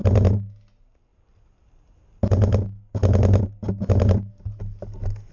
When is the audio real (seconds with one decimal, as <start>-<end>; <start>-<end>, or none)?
0.0-5.3